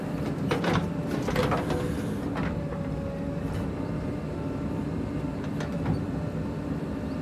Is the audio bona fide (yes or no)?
yes